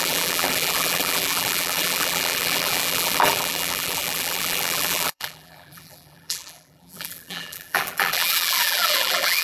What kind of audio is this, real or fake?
fake